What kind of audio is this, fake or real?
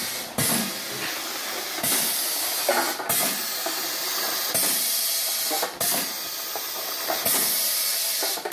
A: real